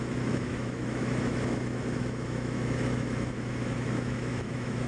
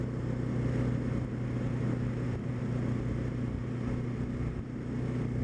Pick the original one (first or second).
second